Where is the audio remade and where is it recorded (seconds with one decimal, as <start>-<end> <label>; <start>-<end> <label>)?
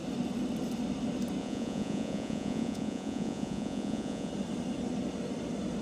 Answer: 0.0-1.4 recorded; 1.4-4.3 remade; 4.3-5.8 recorded